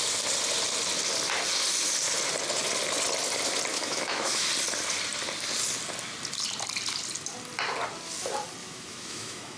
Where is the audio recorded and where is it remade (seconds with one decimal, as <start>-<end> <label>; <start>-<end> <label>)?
0.0-3.7 recorded; 3.7-4.5 remade; 4.5-8.6 recorded; 8.6-9.6 remade